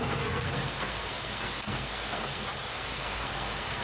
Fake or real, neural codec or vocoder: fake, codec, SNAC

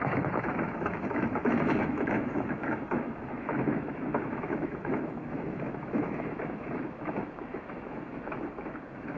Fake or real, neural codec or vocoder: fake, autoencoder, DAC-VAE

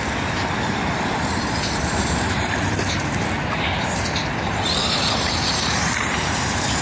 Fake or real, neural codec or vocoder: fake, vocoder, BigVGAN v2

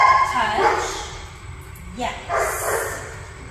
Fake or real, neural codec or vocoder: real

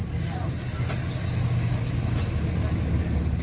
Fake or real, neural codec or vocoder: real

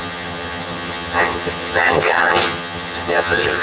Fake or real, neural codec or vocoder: fake, vocoder, HiFi-GAN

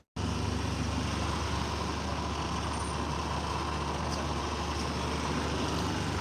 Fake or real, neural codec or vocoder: real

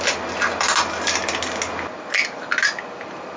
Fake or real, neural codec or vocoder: real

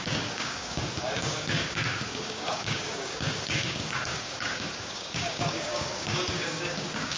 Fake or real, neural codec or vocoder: fake, codec, DAC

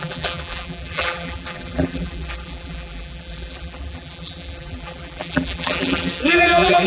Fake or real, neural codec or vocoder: fake, vocoder, BigVGAN v2